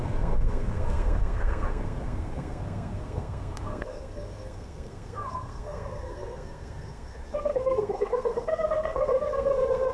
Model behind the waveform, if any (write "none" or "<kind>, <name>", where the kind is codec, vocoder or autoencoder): codec, SNAC